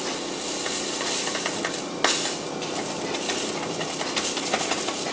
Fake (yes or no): no